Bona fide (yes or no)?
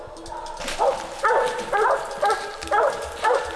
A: yes